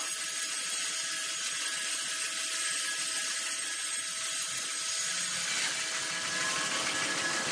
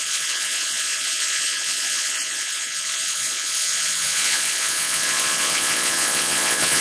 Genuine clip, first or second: first